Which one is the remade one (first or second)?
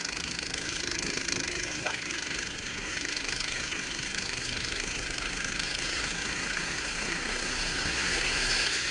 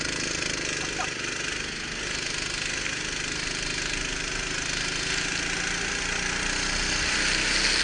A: first